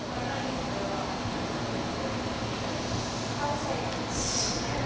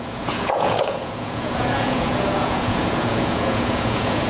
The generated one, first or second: second